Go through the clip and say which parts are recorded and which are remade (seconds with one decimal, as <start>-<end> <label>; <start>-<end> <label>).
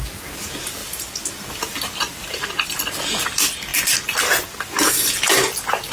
0.0-0.8 recorded; 0.8-2.9 remade; 2.9-5.9 recorded